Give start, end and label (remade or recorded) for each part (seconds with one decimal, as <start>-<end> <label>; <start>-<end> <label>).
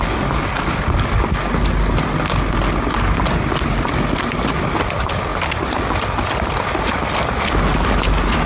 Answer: 0.0-8.5 recorded